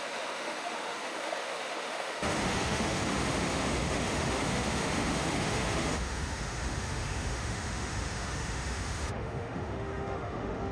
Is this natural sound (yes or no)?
no